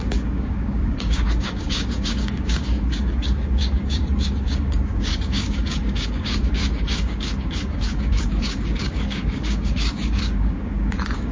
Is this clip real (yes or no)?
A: no